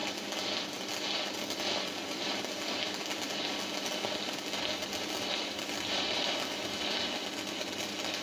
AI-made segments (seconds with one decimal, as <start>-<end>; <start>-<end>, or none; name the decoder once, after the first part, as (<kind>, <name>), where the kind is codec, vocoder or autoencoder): none